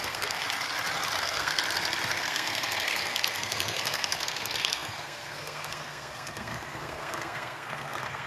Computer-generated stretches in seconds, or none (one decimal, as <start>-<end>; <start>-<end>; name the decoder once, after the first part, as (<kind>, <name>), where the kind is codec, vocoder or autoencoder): 0.0-0.4 (codec, SNAC); 1.2-1.6; 2.1-8.3